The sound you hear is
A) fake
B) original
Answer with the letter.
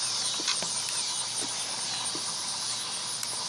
B